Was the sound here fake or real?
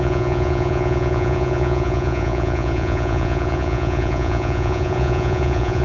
fake